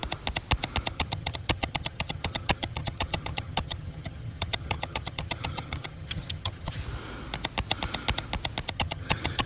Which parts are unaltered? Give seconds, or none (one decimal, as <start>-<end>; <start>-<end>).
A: 0.0-0.9; 6.8-8.7

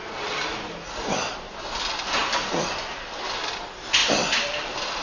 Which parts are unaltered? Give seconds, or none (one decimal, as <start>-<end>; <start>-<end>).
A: 0.0-5.0

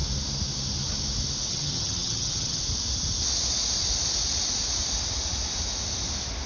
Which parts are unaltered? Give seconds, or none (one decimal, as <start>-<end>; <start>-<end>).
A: 0.0-1.5; 2.6-6.5

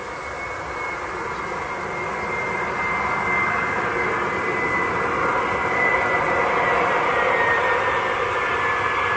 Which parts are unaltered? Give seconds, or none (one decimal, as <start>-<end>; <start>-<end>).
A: 0.0-9.2

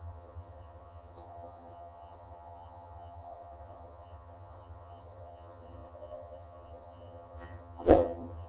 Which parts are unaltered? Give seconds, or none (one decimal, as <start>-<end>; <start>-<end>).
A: none

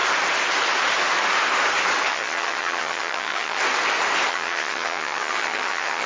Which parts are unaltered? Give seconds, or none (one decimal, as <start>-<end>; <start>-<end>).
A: 0.0-2.1; 3.6-4.3

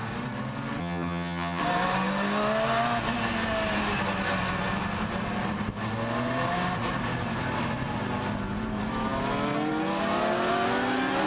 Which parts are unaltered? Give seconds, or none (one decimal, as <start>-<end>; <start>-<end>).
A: 0.0-0.8; 1.6-11.3